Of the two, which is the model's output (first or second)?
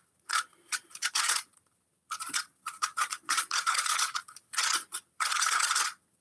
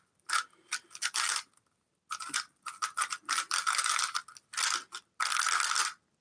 first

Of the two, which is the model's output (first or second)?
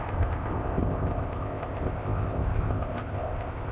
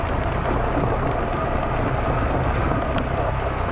first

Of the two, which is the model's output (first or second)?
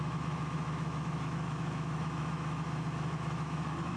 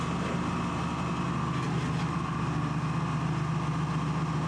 first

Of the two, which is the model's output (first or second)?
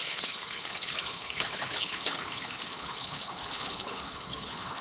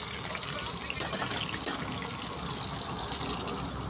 first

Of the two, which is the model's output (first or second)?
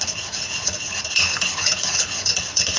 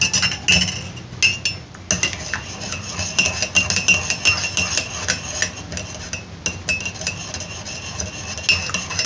first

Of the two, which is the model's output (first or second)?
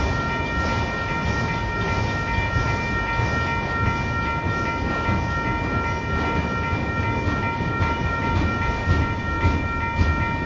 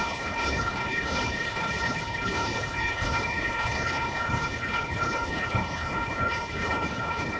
second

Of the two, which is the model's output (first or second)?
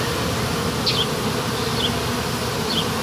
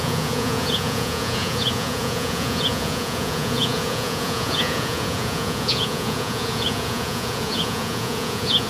second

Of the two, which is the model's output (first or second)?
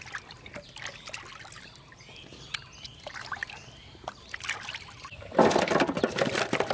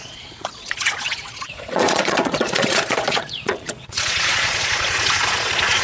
second